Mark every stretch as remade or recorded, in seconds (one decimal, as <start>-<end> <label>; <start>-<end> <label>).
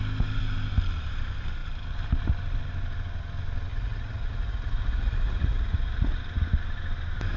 0.0-3.7 recorded; 3.7-6.2 remade; 6.2-7.4 recorded